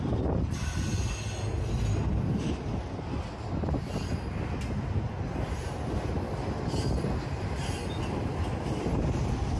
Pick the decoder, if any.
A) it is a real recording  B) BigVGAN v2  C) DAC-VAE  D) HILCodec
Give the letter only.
A